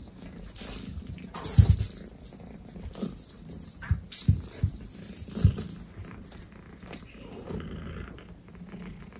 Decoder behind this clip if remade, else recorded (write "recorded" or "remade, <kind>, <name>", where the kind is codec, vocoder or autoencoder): recorded